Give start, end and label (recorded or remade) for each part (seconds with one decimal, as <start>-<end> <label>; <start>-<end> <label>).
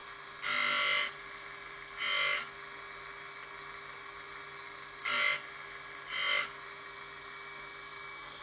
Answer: 0.0-8.4 recorded